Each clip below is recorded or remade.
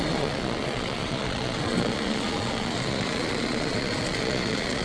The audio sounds remade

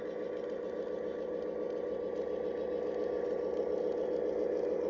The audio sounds recorded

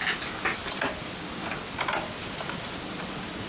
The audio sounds recorded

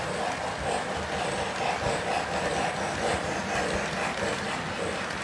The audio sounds recorded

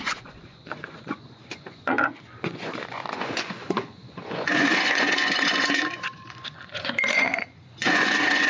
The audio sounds remade